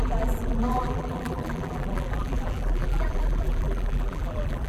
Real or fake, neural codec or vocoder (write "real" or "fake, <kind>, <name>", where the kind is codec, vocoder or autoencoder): fake, vocoder, BigVGAN v2